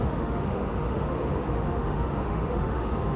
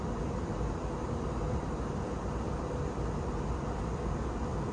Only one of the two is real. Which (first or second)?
second